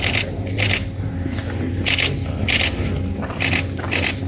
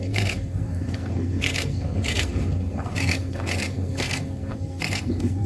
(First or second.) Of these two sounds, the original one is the first